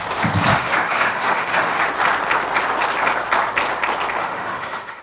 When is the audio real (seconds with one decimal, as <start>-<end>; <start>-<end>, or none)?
0.0-0.5; 1.8-4.2